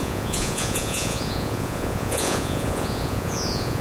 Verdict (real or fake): fake